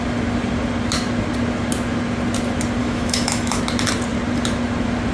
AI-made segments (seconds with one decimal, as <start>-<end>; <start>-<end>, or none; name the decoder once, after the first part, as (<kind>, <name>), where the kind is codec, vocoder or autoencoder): 2.8-3.6 (autoencoder, DAC-VAE)